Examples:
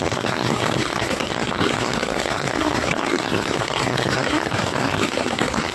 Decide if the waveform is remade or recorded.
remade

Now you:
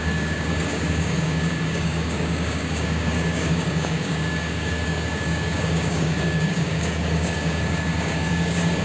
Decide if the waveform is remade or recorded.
remade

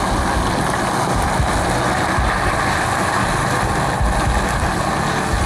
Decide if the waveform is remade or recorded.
recorded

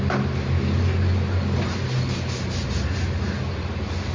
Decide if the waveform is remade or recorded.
recorded